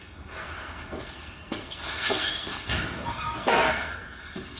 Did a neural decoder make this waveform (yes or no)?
yes